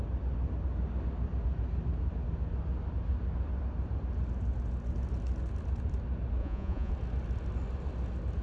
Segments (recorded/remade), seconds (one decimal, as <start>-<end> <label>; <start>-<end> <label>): 0.0-6.4 recorded; 6.4-6.9 remade; 6.9-8.4 recorded